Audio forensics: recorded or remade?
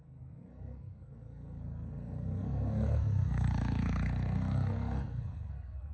remade